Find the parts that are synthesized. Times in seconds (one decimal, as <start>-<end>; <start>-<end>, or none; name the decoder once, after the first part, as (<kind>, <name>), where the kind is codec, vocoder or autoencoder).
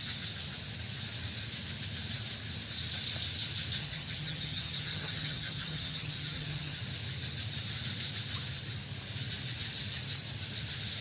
3.8-6.8 (vocoder, HiFi-GAN)